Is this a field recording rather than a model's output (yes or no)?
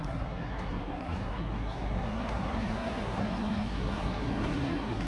no